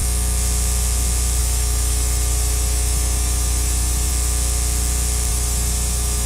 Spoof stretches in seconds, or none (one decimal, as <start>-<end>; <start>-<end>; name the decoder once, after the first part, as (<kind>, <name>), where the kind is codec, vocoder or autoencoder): 1.4-4.1 (autoencoder, DAC-VAE); 5.3-6.3